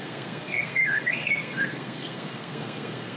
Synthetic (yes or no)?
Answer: yes